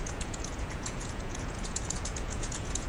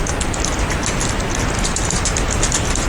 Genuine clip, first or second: second